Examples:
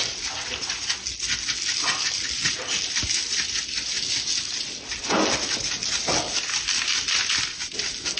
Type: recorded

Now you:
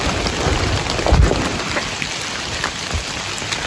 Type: recorded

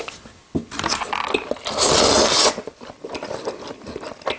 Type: recorded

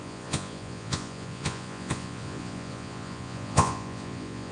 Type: remade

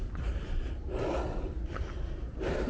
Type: recorded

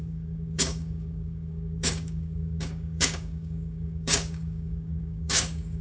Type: remade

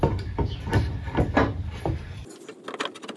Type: recorded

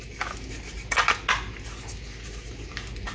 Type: recorded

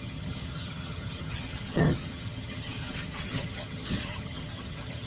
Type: remade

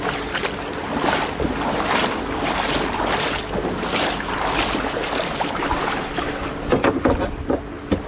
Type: recorded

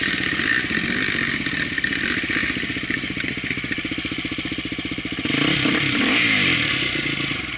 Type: recorded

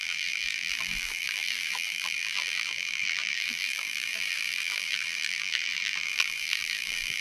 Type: remade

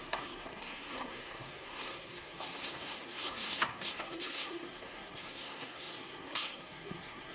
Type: remade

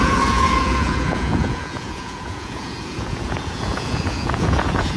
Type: remade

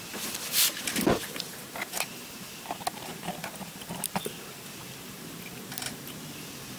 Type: recorded